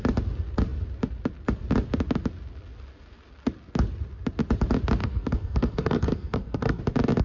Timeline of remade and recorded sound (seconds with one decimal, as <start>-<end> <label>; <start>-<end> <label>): 0.0-5.0 recorded; 5.0-6.8 remade; 6.8-7.2 recorded